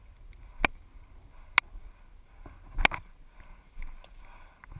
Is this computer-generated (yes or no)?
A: no